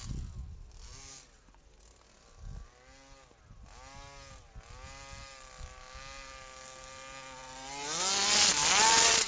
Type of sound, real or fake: real